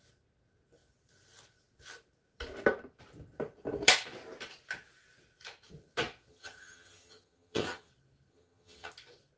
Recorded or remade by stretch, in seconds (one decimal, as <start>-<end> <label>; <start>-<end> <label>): 0.0-6.3 recorded; 6.3-7.9 remade; 7.9-8.3 recorded; 8.3-8.9 remade; 8.9-9.4 recorded